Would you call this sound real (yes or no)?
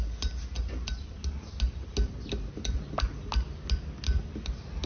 yes